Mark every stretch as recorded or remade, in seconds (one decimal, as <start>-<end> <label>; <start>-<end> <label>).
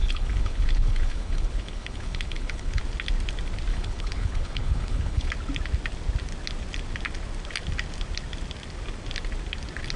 0.0-2.8 remade; 2.8-3.7 recorded; 3.7-5.3 remade; 5.3-10.0 recorded